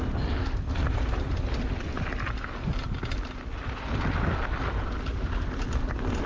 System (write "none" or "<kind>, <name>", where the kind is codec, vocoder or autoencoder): none